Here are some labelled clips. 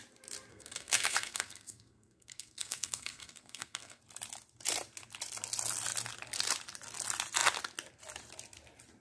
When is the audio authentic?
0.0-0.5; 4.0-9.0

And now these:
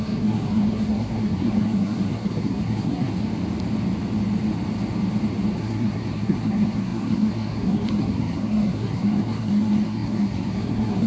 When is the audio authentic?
3.1-5.6

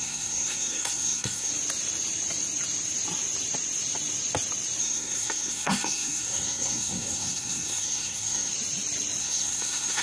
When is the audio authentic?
1.5-4.8; 8.5-9.2

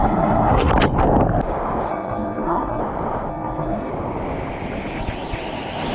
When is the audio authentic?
0.7-1.9; 2.8-3.3; 3.9-5.9

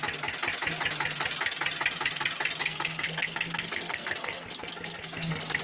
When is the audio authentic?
0.0-2.6

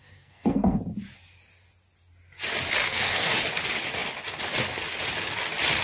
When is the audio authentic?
0.8-2.8; 3.3-5.8

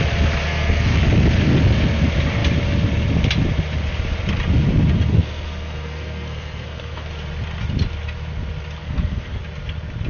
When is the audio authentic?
0.0-0.4; 1.0-5.1; 7.1-8.8; 9.4-10.1